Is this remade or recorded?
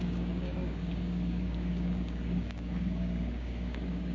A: remade